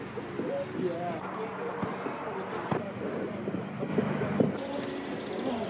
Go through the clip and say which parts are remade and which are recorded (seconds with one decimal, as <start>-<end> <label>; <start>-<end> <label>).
0.0-5.7 recorded